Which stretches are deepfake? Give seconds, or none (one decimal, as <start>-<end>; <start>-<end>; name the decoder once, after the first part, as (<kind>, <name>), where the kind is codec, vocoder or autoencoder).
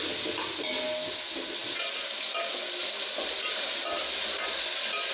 none